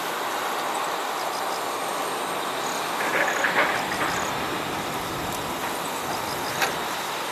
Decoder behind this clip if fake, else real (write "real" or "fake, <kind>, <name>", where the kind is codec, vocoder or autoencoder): real